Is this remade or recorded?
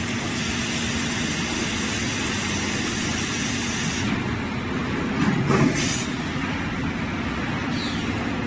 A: recorded